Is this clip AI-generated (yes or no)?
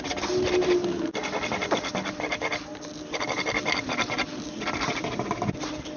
no